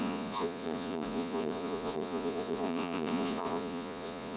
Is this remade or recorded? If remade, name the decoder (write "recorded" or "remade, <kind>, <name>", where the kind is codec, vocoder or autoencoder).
remade, vocoder, Vocos